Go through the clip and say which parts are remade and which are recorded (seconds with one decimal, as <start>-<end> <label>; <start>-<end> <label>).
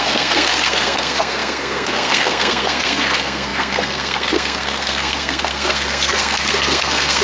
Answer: 0.0-7.2 remade